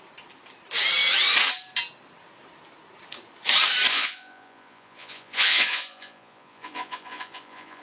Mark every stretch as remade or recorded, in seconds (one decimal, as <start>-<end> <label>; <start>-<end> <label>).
0.0-3.9 recorded; 3.9-7.8 remade